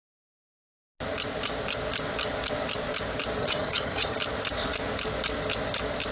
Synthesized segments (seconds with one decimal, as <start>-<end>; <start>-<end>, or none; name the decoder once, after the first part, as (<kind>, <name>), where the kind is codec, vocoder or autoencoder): 3.4-4.2 (vocoder, HiFi-GAN)